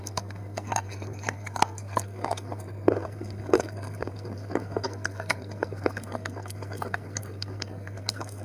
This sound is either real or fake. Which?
fake